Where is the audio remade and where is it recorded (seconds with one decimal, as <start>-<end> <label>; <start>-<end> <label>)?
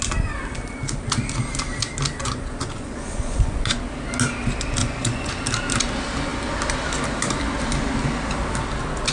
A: 0.0-2.2 recorded; 2.2-3.8 remade; 3.8-4.8 recorded; 4.8-5.3 remade; 5.3-9.1 recorded